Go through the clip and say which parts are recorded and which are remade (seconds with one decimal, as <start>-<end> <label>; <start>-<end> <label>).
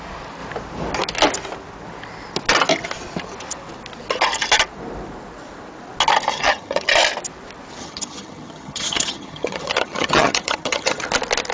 0.0-6.3 recorded; 6.3-6.9 remade; 6.9-7.8 recorded; 7.8-11.0 remade; 11.0-11.5 recorded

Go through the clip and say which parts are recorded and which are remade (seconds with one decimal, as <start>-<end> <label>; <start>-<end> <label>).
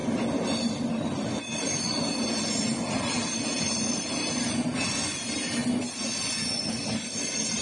0.0-7.6 recorded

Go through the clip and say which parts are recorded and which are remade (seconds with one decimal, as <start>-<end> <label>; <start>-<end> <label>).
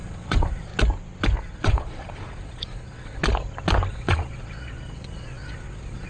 0.0-0.7 remade; 0.7-1.4 recorded; 1.4-3.2 remade; 3.2-3.9 recorded; 3.9-6.1 remade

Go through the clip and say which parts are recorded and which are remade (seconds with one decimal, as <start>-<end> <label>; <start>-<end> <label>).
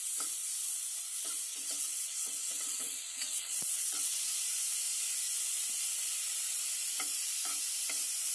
0.0-1.5 recorded; 1.5-4.2 remade; 4.2-8.3 recorded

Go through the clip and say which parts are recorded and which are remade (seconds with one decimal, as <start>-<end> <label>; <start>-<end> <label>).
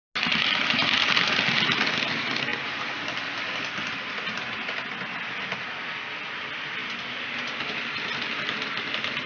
0.0-9.3 recorded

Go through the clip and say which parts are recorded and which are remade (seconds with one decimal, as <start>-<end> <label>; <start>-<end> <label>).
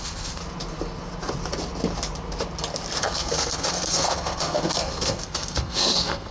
0.0-0.4 remade; 0.4-3.0 recorded; 3.0-6.3 remade